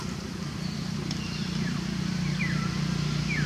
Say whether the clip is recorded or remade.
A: recorded